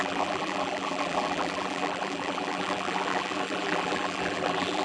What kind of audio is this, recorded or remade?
remade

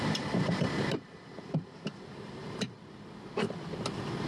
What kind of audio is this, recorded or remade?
remade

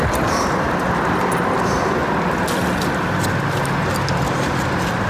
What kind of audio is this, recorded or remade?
recorded